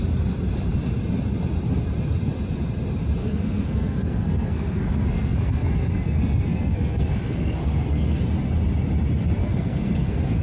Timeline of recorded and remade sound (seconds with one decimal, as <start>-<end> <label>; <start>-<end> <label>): 0.0-3.2 recorded; 3.2-8.2 remade; 8.2-9.4 recorded; 9.4-10.4 remade